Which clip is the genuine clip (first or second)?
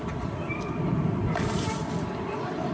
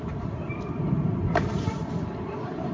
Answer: first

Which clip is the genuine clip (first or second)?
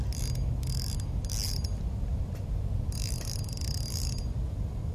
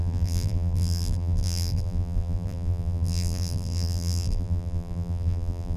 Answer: first